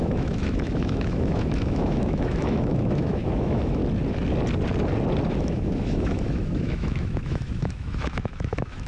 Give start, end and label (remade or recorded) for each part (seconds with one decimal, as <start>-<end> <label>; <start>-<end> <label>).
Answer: 0.0-3.8 remade; 3.8-5.3 recorded; 5.3-8.9 remade